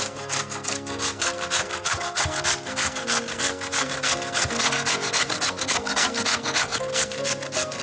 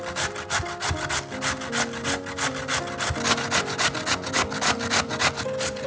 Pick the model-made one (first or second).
first